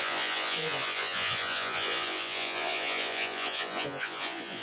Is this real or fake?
fake